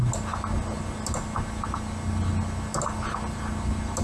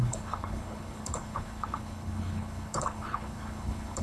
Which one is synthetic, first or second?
second